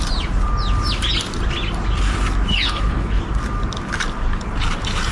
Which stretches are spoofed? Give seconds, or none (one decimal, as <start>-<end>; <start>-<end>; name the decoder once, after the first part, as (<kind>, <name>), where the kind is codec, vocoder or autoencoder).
2.5-3.2 (codec, HILCodec)